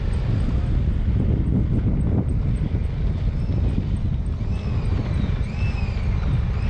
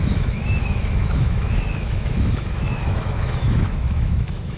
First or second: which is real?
first